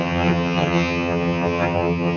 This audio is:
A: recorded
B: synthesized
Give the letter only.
B